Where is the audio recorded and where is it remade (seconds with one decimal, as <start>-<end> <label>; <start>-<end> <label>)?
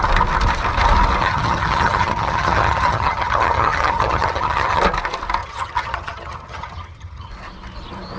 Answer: 0.0-1.2 recorded; 1.2-4.8 remade; 4.8-5.4 recorded; 5.4-7.3 remade; 7.3-8.2 recorded